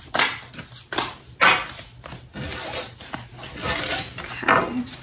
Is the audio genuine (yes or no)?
yes